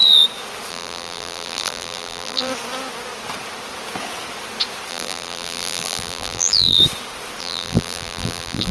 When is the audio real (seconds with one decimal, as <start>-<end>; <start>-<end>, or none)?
0.0-0.7; 2.5-4.9; 6.8-7.4